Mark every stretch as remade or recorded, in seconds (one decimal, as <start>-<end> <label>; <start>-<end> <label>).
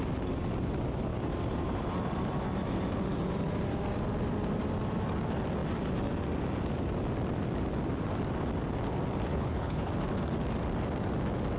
0.0-9.3 recorded; 9.3-9.9 remade; 9.9-11.6 recorded